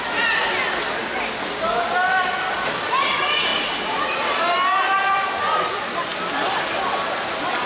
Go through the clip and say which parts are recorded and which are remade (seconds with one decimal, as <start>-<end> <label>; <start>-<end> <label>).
0.0-7.7 recorded